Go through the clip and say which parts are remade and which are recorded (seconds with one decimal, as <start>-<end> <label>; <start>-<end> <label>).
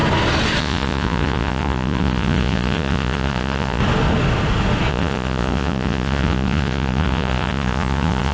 0.0-0.6 recorded; 0.6-3.8 remade; 3.8-4.9 recorded; 4.9-8.3 remade